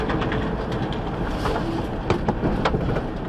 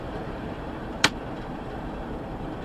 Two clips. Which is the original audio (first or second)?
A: first